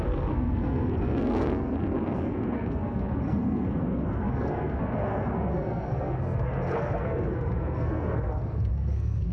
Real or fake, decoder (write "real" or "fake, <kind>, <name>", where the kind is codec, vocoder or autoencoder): fake, codec, SNAC